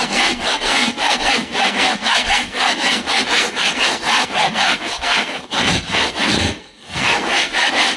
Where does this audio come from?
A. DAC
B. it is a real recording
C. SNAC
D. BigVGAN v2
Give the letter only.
C